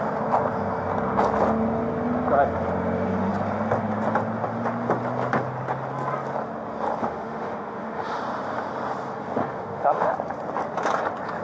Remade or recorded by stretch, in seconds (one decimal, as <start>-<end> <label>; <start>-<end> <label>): 0.0-7.0 recorded; 7.0-8.2 remade; 8.2-9.4 recorded; 9.4-10.1 remade; 10.1-11.4 recorded